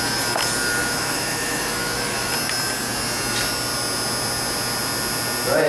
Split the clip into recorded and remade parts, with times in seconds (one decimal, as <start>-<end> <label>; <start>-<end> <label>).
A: 0.0-0.8 recorded; 0.8-2.3 remade; 2.3-5.7 recorded